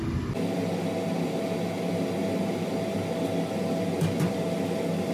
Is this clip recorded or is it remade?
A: recorded